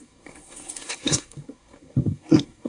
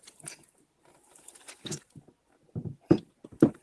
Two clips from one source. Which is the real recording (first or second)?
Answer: second